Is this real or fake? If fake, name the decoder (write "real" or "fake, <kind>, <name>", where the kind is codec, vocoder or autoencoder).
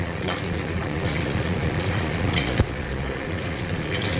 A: fake, vocoder, Vocos